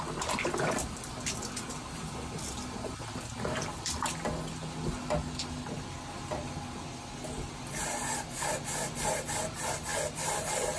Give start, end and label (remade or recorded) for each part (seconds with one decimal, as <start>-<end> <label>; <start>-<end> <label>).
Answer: 0.0-10.8 recorded